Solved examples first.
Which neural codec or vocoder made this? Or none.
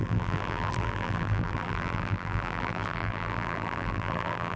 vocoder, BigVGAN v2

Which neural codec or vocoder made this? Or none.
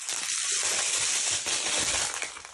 none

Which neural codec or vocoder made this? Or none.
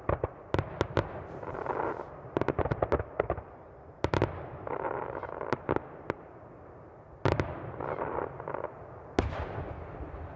none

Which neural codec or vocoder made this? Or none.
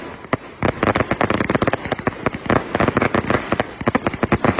none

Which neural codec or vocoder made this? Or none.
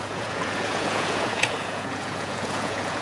vocoder, Vocos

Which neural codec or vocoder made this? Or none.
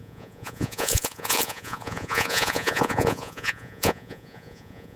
vocoder, Vocos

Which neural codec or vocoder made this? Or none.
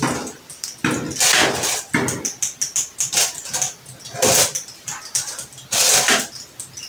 none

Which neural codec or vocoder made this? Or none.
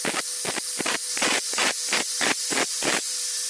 none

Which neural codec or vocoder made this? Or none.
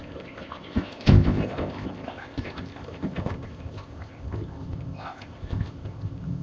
codec, ZipCodec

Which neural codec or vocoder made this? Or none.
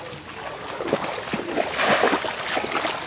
none